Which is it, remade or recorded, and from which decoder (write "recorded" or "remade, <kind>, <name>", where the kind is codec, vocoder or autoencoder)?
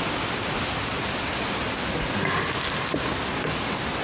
recorded